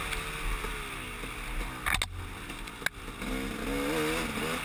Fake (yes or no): no